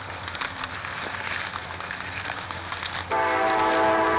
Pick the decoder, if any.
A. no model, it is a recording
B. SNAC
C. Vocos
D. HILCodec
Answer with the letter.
A